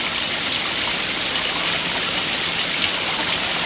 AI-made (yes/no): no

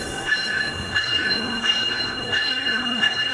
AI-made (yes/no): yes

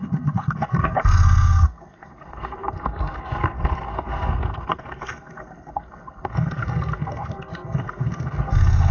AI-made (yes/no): yes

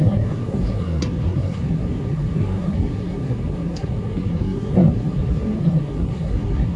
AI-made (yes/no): yes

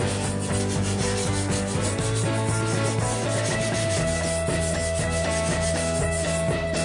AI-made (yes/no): no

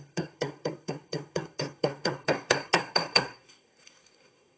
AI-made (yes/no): yes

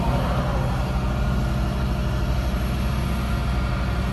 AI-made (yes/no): no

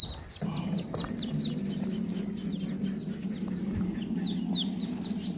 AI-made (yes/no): no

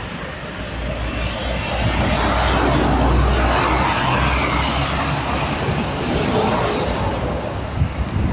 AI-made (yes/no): no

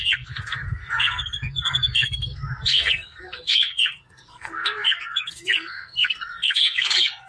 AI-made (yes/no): yes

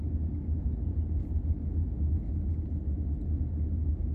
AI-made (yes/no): no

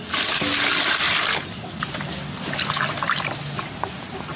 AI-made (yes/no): no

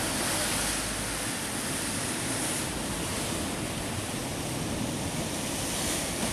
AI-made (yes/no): no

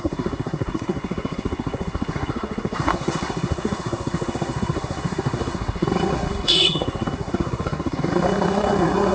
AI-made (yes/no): yes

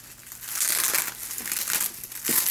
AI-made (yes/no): no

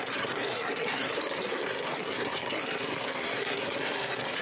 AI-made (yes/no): yes